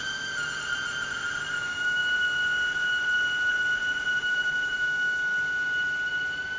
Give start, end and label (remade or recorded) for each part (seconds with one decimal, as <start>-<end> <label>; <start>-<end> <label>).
0.0-1.6 recorded; 1.6-2.0 remade; 2.0-4.2 recorded; 4.2-5.3 remade; 5.3-6.6 recorded